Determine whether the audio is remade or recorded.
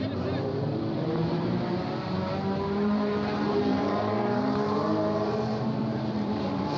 remade